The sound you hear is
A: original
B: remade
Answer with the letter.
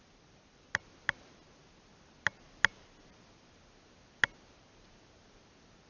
A